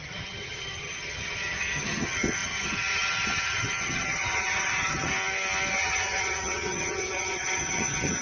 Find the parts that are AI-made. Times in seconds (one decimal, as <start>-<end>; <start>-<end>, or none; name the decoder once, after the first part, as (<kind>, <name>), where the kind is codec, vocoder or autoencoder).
0.0-5.1 (vocoder, HiFi-GAN); 5.7-8.2